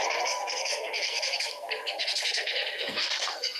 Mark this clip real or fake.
fake